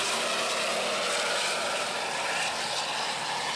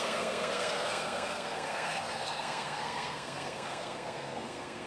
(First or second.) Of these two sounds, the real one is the first